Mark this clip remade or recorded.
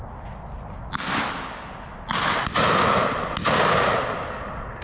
recorded